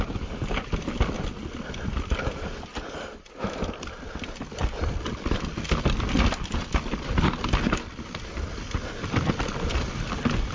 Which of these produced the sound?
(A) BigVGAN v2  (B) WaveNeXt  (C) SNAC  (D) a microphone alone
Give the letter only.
D